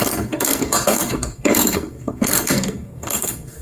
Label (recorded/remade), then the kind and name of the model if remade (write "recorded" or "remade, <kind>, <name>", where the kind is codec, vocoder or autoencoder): remade, codec, SNAC